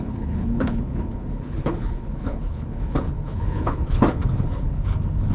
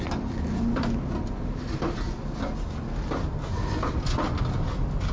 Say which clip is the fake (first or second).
first